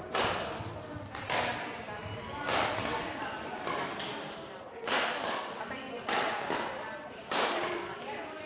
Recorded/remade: recorded